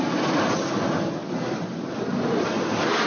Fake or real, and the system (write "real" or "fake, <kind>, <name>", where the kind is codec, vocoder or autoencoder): real